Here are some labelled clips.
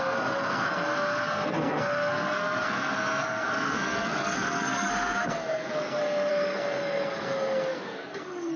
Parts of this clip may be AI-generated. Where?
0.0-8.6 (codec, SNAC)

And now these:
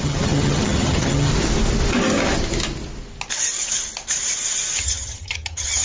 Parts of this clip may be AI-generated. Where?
0.0-1.3 (vocoder, HiFi-GAN); 4.8-5.8

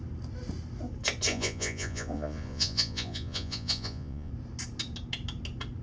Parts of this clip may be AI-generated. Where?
1.3-4.3 (vocoder, Vocos)